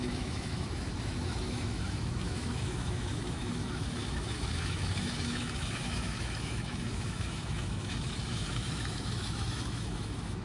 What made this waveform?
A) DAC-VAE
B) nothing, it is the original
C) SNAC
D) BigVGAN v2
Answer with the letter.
A